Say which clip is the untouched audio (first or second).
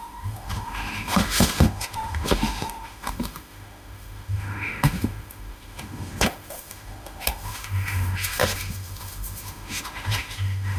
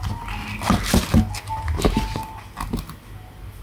second